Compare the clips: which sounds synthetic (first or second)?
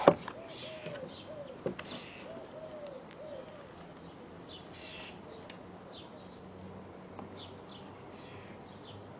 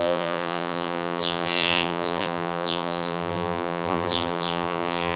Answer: second